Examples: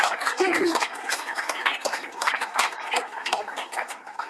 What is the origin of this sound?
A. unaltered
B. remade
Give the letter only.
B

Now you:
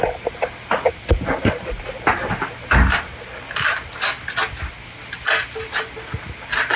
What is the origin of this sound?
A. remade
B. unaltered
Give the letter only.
B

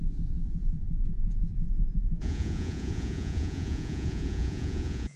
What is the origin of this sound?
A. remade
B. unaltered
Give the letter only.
A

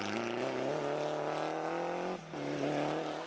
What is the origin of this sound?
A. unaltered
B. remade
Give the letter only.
A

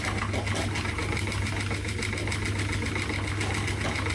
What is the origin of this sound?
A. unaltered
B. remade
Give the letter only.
A